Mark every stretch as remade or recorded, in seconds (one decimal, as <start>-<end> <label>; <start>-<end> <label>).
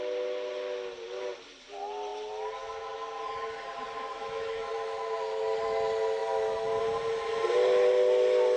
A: 0.0-4.1 recorded; 4.1-4.7 remade; 4.7-8.6 recorded